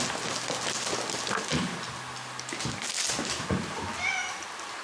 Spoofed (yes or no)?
no